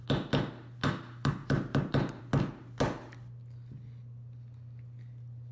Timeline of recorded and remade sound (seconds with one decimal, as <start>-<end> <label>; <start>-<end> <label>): 0.0-1.4 recorded; 1.4-2.2 remade; 2.2-5.5 recorded